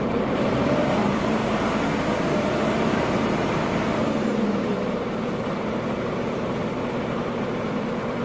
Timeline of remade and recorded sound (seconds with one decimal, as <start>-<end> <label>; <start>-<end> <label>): 0.0-1.4 remade; 1.4-2.0 recorded; 2.0-8.2 remade